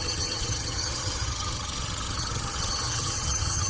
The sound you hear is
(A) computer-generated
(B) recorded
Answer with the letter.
A